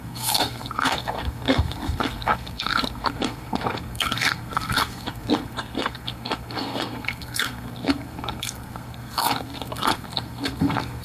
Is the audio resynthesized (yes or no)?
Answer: yes